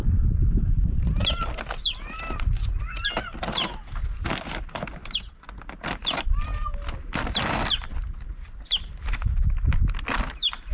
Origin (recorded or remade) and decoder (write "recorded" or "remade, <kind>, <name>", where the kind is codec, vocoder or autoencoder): recorded